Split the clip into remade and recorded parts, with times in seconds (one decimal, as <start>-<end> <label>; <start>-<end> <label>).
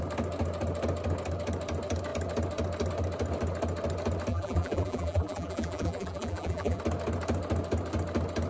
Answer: 0.0-4.3 recorded; 4.3-6.8 remade; 6.8-8.5 recorded